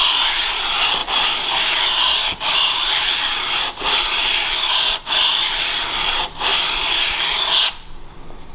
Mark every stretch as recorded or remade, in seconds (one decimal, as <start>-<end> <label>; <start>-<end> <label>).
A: 0.0-1.0 recorded; 1.0-5.6 remade; 5.6-6.5 recorded; 6.5-7.7 remade; 7.7-8.5 recorded